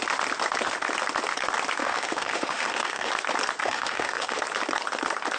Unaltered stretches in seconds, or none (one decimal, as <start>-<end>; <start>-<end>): 0.0-1.8; 3.1-3.6; 4.4-5.4